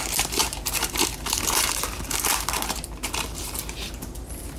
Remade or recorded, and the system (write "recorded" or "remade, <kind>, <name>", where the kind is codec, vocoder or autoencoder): remade, vocoder, BigVGAN v2